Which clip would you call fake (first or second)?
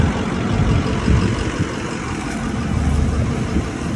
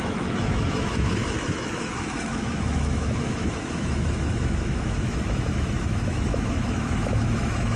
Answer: second